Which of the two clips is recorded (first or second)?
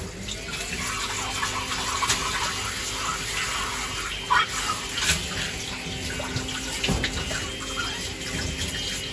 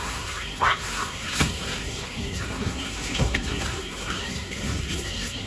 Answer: first